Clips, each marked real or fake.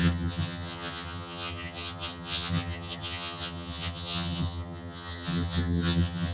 fake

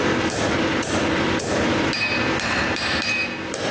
real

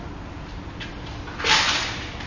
real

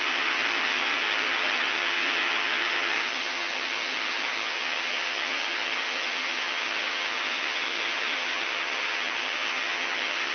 fake